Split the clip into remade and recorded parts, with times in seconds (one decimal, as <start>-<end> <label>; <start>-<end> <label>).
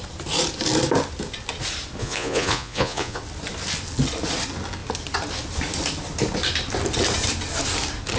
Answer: 0.0-2.0 recorded; 2.0-3.2 remade; 3.2-8.2 recorded